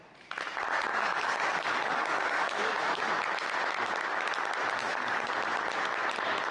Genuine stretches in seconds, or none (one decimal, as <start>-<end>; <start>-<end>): 0.0-0.9; 3.0-4.8; 5.3-6.5